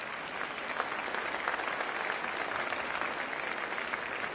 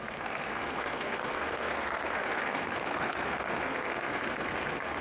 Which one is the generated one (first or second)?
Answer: second